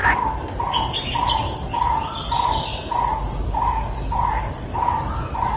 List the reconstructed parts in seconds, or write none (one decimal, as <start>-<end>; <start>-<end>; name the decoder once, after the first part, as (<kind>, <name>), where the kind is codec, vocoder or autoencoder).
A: none